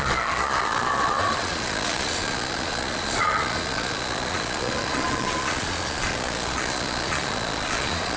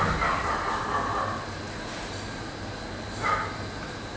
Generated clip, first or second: first